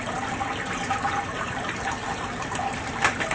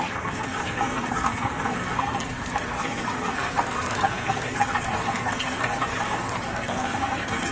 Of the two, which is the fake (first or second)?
second